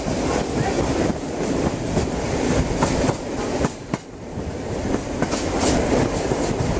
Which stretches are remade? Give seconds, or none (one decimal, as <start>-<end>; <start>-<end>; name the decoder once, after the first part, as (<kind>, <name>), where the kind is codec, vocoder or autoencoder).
1.1-5.2 (vocoder, BigVGAN v2)